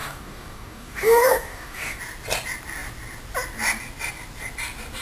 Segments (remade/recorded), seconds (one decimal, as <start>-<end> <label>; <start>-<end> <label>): 0.0-2.0 remade; 2.0-5.0 recorded